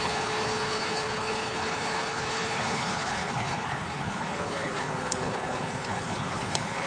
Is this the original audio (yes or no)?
no